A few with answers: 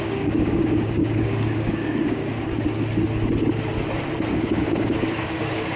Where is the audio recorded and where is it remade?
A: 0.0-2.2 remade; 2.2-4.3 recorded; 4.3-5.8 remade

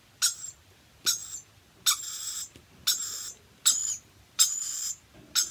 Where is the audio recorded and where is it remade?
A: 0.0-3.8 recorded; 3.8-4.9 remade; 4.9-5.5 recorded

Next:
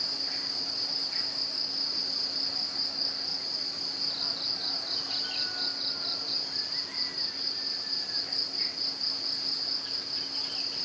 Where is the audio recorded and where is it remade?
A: 0.0-10.8 recorded

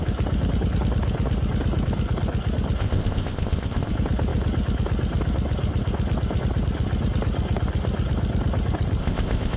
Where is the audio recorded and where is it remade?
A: 0.0-2.8 recorded; 2.8-3.9 remade; 3.9-9.0 recorded; 9.0-9.6 remade